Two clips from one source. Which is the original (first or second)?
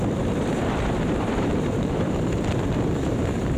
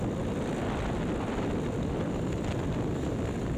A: second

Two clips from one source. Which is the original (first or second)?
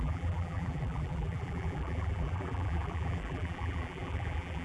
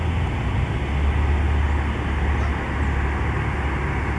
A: second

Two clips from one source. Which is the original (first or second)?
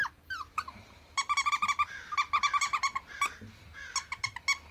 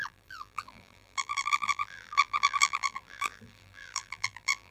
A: first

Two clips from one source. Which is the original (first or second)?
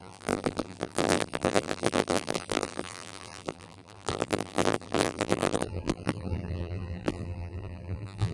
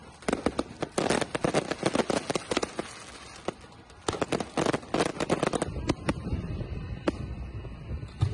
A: second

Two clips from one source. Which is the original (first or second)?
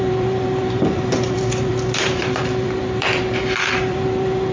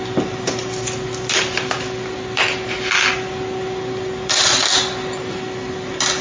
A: second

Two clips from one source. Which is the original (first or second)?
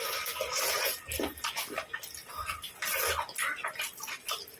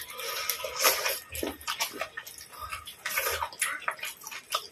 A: first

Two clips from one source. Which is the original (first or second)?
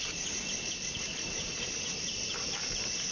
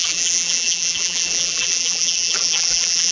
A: first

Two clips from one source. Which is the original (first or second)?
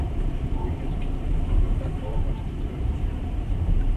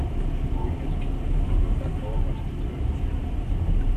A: second